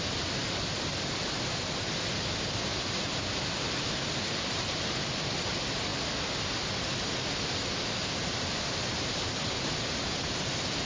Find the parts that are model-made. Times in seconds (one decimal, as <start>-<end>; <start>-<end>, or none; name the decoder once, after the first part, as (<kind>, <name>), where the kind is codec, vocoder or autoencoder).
2.7-4.8 (vocoder, BigVGAN v2)